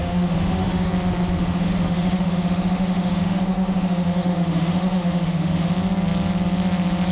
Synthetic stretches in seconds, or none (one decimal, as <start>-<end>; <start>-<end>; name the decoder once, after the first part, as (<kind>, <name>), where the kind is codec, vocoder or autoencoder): 0.0-0.9 (autoencoder, DAC-VAE); 1.4-5.7